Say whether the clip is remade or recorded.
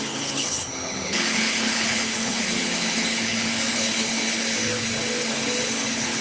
remade